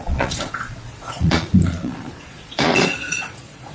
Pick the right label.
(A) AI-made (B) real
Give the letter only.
A